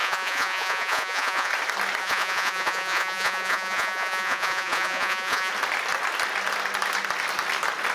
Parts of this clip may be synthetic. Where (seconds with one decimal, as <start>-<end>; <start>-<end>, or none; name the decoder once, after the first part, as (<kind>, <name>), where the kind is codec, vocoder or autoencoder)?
0.0-1.5 (vocoder, Vocos); 2.0-5.5